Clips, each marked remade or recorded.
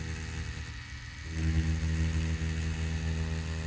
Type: recorded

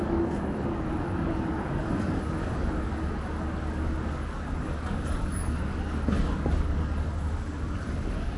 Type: remade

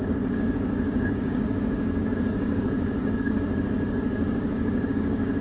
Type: remade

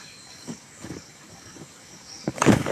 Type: remade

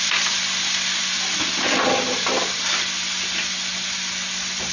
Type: recorded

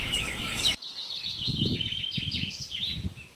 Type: remade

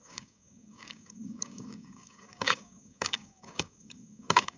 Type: remade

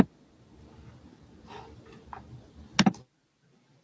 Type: recorded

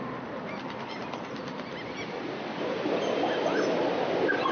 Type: recorded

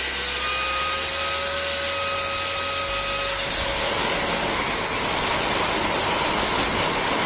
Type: recorded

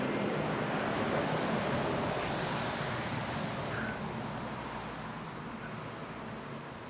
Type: recorded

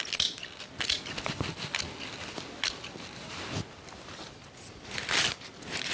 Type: recorded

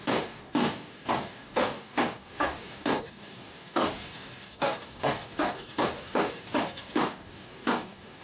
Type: remade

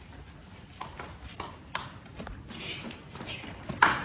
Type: recorded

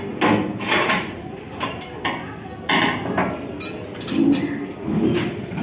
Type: recorded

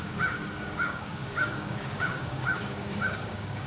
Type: remade